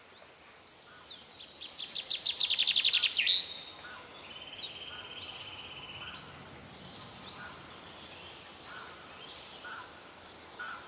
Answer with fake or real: real